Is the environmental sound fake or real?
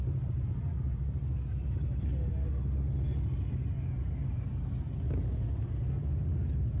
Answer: real